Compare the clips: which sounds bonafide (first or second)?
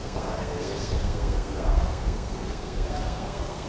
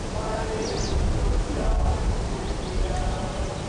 second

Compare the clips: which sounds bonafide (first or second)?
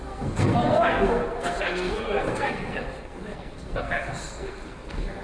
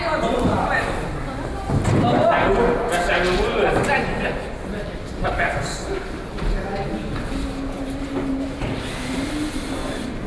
second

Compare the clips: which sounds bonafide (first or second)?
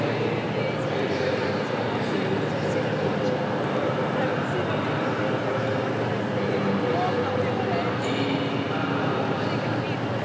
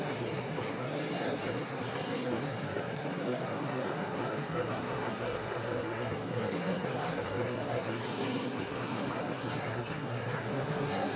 first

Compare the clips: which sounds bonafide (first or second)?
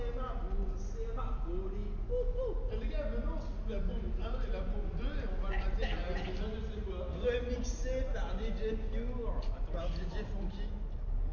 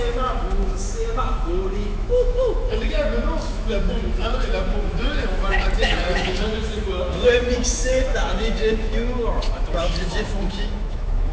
first